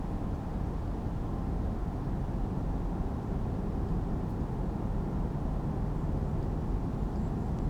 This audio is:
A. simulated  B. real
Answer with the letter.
B